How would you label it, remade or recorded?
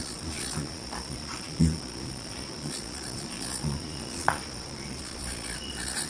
remade